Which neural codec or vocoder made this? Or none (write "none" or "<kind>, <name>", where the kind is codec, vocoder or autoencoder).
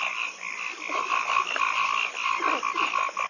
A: none